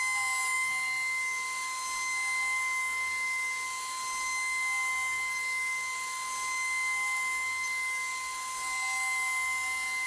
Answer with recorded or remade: recorded